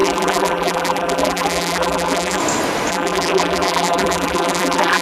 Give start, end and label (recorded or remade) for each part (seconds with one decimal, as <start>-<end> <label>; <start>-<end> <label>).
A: 0.0-2.4 remade; 2.4-2.9 recorded; 2.9-5.0 remade